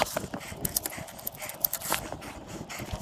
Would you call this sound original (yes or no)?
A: yes